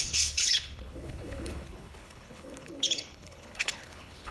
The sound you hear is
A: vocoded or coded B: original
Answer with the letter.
A